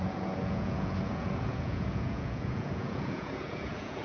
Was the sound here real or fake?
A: fake